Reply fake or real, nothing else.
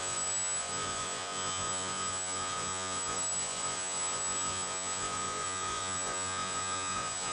fake